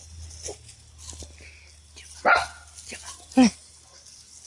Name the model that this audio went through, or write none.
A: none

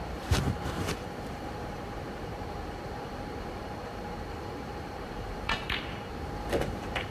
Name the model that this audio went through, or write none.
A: vocoder, BigVGAN v2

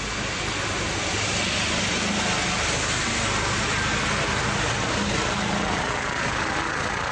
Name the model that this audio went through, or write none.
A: none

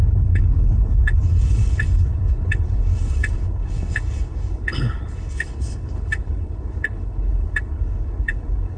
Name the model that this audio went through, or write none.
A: codec, HILCodec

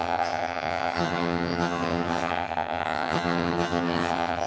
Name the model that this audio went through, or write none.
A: vocoder, HiFi-GAN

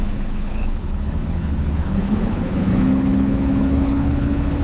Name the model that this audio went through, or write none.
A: codec, HILCodec